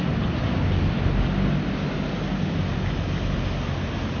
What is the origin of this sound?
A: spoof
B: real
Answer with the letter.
B